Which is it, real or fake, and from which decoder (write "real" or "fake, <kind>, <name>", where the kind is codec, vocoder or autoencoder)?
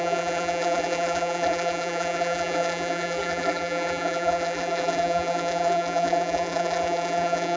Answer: fake, vocoder, BigVGAN v2